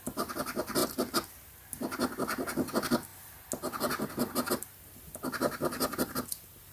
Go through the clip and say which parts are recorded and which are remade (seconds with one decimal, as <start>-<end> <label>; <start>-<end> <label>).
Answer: 0.0-6.7 recorded